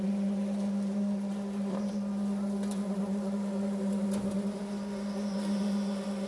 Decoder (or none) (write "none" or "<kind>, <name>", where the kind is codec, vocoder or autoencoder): none